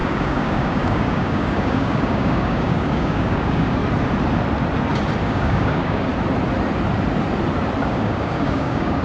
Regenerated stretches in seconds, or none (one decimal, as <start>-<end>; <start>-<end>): 0.0-3.8; 5.2-6.1; 7.8-9.0